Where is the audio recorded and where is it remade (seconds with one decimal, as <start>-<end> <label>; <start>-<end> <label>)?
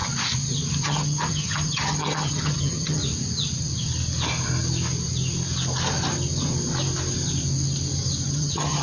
0.0-0.8 recorded; 0.8-3.0 remade; 3.0-8.3 recorded; 8.3-8.8 remade